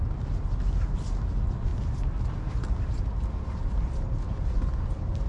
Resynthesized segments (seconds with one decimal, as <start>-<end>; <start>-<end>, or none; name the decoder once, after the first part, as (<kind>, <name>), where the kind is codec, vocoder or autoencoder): none